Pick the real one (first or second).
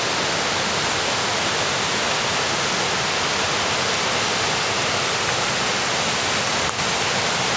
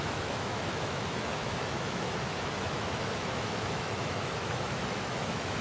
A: first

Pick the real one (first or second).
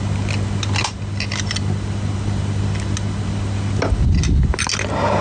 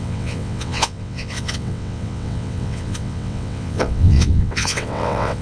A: first